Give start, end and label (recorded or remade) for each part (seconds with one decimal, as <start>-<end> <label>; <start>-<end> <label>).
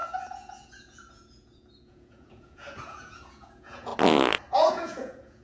0.0-3.9 remade; 3.9-4.7 recorded; 4.7-5.4 remade